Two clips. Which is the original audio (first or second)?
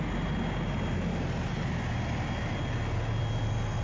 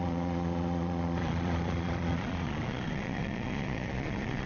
first